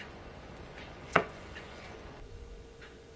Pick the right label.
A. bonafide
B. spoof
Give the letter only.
B